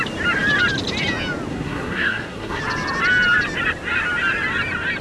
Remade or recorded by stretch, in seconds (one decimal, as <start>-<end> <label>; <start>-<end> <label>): 0.0-1.5 recorded; 1.5-2.6 remade; 2.6-5.0 recorded